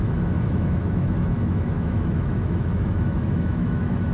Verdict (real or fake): fake